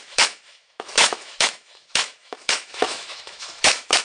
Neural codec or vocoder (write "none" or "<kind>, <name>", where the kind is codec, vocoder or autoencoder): autoencoder, DAC-VAE